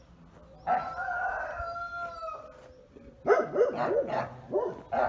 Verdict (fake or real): real